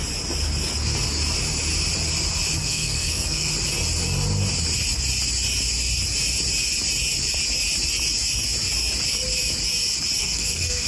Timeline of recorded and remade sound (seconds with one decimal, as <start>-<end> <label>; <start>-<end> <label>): 0.0-2.6 recorded; 2.6-3.5 remade; 3.5-10.2 recorded; 10.2-10.9 remade